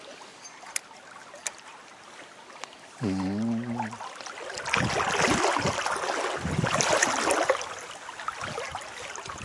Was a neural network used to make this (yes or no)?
no